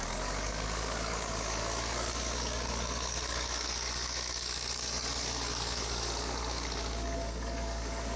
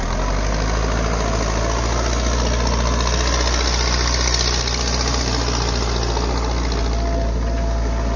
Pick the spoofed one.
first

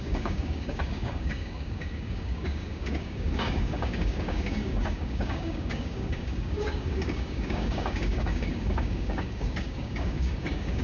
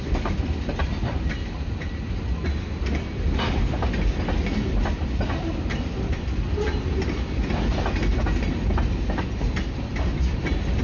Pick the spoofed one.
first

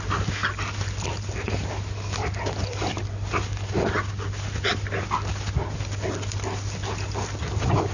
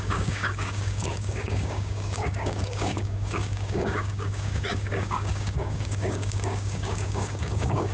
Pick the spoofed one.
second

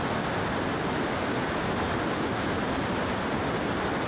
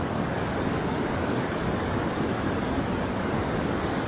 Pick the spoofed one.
second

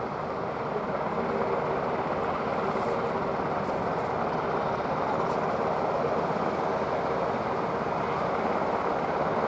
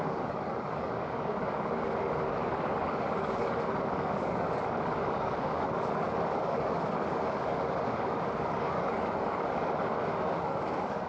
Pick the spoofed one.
second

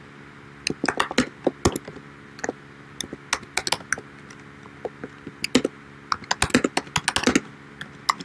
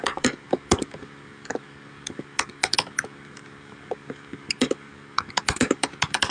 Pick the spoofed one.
second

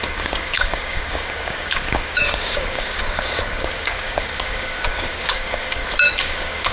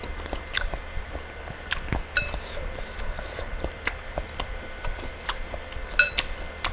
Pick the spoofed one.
first